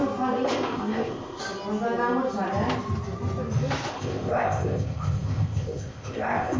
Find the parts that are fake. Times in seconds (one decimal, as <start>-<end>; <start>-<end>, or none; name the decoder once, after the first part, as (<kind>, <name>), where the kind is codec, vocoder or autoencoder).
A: 0.5-1.4 (codec, ZipCodec); 3.9-6.6

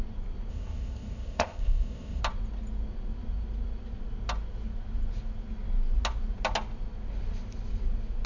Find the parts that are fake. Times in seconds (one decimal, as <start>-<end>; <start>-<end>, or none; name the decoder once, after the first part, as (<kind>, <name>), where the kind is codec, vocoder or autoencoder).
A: 0.5-2.2 (codec, ZipCodec)

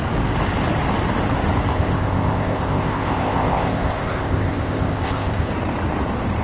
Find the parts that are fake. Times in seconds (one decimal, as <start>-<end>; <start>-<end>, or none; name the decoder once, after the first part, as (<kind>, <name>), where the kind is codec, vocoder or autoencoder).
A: 1.7-5.5 (codec, ZipCodec)

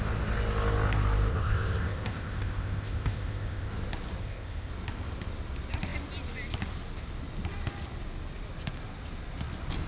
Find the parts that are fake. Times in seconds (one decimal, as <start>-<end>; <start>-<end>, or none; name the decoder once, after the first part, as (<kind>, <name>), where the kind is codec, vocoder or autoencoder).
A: 1.3-3.7 (codec, ZipCodec); 4.2-4.7

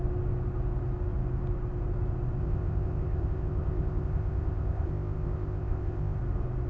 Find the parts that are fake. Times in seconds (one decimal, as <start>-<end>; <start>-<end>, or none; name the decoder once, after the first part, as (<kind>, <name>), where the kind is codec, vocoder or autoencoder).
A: 2.4-6.2 (codec, ZipCodec)

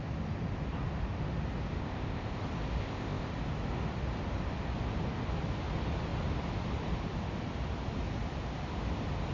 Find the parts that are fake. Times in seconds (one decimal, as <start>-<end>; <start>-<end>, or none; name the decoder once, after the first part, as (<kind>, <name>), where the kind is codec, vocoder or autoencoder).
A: 1.8-2.4 (codec, ZipCodec); 2.8-3.3